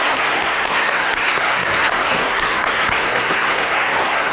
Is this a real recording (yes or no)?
no